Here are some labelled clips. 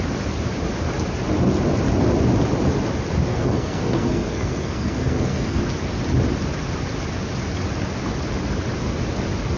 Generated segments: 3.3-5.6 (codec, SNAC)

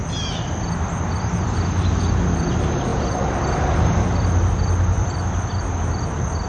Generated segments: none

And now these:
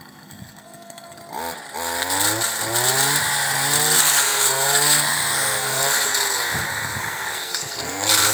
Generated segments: 0.0-1.2 (codec, SNAC); 4.0-8.3